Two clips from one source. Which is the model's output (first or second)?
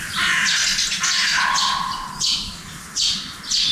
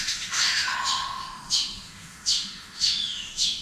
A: second